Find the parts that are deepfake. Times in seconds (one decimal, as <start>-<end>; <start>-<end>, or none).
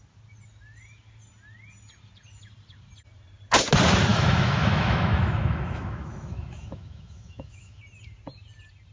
4.1-7.8